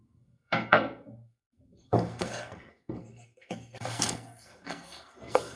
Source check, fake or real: fake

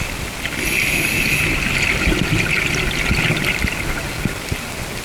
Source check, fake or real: real